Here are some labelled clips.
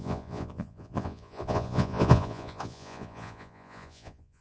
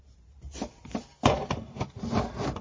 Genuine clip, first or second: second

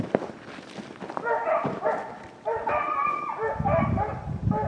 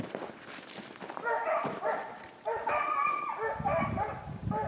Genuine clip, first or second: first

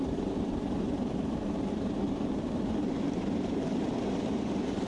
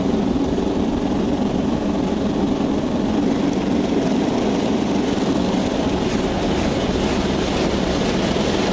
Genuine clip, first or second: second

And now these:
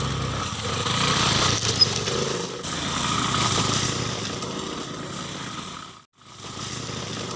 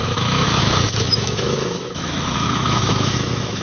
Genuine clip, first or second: first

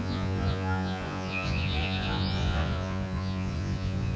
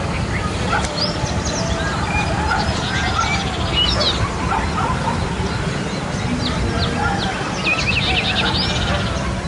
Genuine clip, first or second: second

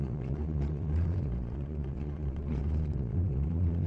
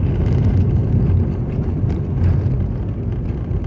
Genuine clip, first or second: second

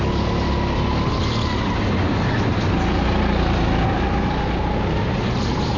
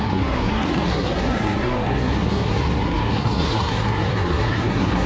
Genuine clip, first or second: first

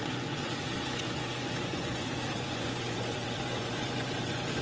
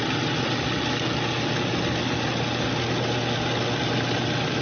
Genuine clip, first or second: second